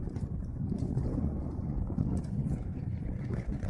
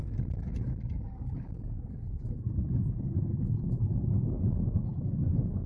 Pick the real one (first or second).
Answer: second